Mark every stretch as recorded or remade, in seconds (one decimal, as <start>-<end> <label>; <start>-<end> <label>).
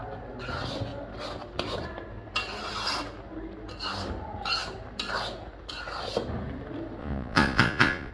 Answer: 0.0-7.0 recorded; 7.0-8.1 remade